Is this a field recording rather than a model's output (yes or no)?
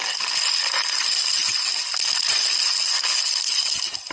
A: yes